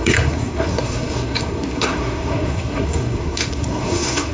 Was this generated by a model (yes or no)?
yes